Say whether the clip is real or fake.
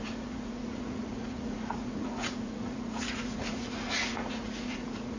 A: fake